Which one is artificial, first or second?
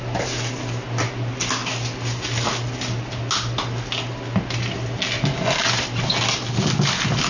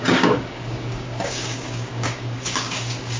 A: second